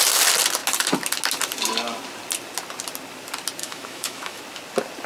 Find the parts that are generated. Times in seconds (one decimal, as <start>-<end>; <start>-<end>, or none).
3.6-4.4